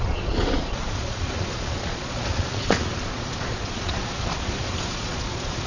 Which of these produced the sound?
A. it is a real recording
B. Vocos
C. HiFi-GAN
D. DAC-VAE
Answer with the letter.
B